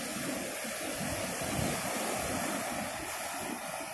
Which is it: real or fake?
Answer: real